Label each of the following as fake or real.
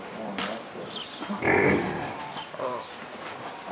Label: real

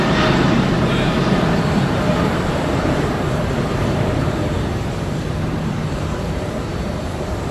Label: fake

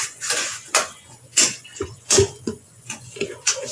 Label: fake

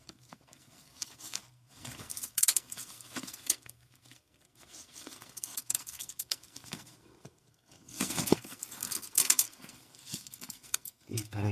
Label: fake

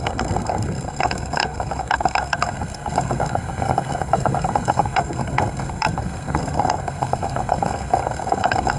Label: fake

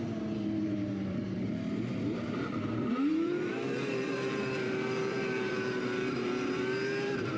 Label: fake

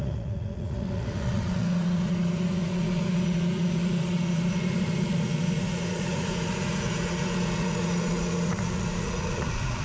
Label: fake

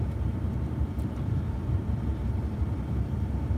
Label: fake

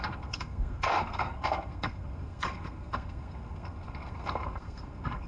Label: fake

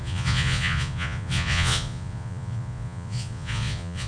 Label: fake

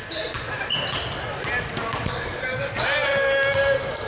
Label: real